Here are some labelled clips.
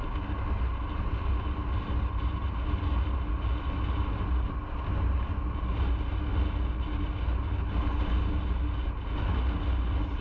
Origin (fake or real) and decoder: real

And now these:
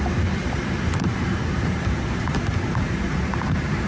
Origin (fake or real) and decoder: fake, vocoder, BigVGAN v2